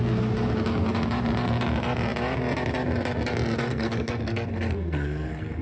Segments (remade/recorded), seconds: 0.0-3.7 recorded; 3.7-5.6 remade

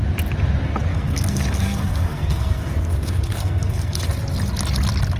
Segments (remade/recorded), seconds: 0.0-0.9 recorded; 0.9-4.0 remade; 4.0-5.2 recorded

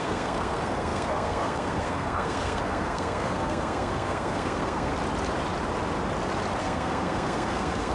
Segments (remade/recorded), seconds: 0.0-4.9 remade; 4.9-6.6 recorded; 6.6-7.9 remade